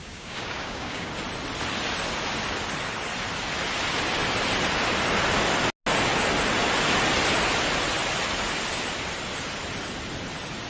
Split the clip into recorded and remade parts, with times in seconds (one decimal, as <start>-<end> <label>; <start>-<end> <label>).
0.0-1.1 remade; 1.1-10.7 recorded